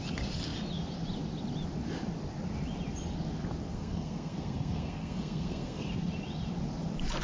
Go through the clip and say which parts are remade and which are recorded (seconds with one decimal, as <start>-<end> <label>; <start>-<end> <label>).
0.0-3.7 recorded; 3.7-5.9 remade; 5.9-7.2 recorded